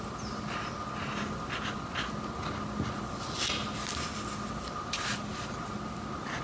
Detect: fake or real real